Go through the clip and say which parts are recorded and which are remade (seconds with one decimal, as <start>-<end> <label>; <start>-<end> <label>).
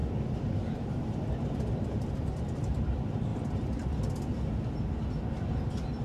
0.0-2.6 remade; 2.6-3.3 recorded; 3.3-4.0 remade; 4.0-6.0 recorded